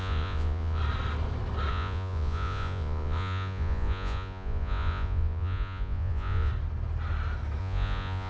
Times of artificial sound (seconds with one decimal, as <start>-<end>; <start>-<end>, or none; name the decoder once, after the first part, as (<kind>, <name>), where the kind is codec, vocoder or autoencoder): 0.0-0.8 (vocoder, Vocos); 1.7-6.5; 7.6-8.3